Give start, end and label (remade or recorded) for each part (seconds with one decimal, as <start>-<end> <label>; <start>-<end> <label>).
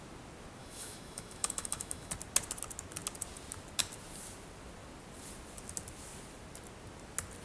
0.0-0.6 recorded; 0.6-2.1 remade; 2.1-7.4 recorded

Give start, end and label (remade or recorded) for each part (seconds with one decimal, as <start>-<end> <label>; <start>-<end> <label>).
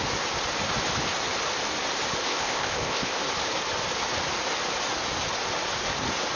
0.0-2.2 recorded; 2.2-3.2 remade; 3.2-6.3 recorded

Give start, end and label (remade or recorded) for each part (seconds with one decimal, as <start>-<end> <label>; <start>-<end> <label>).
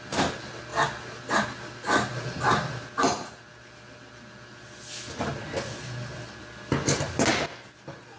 0.0-8.2 recorded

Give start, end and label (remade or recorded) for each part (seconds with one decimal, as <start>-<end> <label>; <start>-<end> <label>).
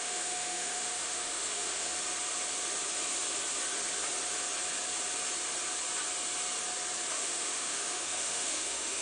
0.0-1.9 remade; 1.9-7.1 recorded; 7.1-9.0 remade